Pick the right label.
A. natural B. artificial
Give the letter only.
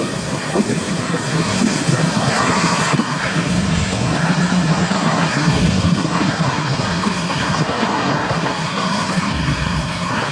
B